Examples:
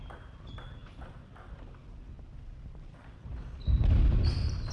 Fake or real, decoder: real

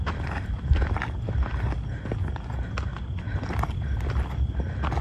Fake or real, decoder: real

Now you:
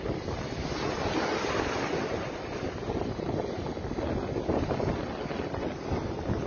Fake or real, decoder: real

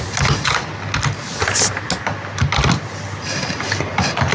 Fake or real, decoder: real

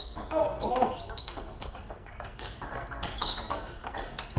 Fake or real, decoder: fake, codec, SNAC